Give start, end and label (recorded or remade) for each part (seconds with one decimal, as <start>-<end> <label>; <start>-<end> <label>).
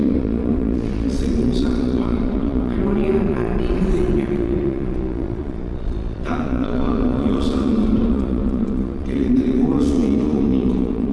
0.0-11.1 remade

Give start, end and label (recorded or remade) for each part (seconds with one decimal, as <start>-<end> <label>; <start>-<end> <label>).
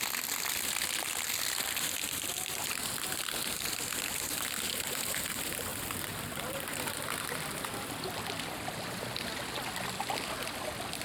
0.0-5.7 recorded; 5.7-7.9 remade; 7.9-11.0 recorded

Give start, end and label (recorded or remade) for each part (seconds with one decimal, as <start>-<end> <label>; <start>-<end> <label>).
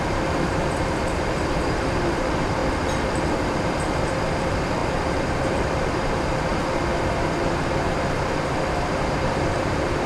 0.0-2.6 remade; 2.6-3.2 recorded; 3.2-6.5 remade; 6.5-7.1 recorded; 7.1-10.1 remade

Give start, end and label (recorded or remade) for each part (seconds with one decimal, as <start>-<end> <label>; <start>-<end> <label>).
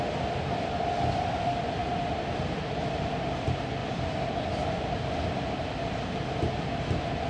0.0-1.8 recorded; 1.8-2.8 remade; 2.8-7.3 recorded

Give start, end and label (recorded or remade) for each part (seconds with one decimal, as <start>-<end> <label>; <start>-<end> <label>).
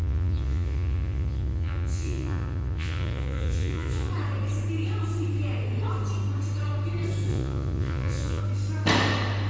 0.0-4.1 remade; 4.1-7.3 recorded; 7.3-8.4 remade; 8.4-9.5 recorded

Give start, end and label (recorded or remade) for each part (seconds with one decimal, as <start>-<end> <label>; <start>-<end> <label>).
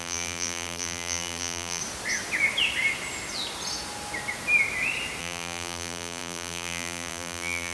0.0-1.8 remade; 1.8-5.2 recorded; 5.2-7.7 remade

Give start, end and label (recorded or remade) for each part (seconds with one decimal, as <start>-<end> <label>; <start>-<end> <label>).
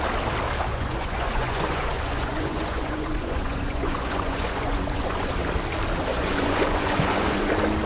0.0-0.7 recorded; 0.7-5.3 remade; 5.3-6.1 recorded; 6.1-7.5 remade; 7.5-7.9 recorded